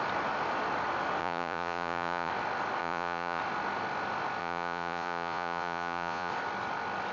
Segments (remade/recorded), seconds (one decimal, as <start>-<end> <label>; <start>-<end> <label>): 0.0-1.2 recorded; 1.2-2.3 remade; 2.3-2.8 recorded; 2.8-3.4 remade; 3.4-4.4 recorded; 4.4-6.3 remade; 6.3-7.1 recorded